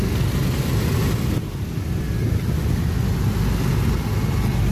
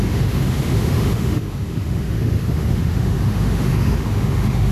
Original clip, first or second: first